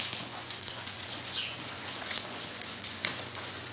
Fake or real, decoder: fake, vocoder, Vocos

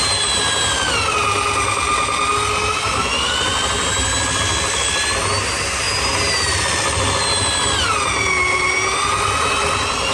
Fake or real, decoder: real